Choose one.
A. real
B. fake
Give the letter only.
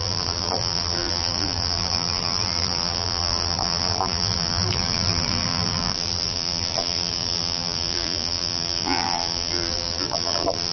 B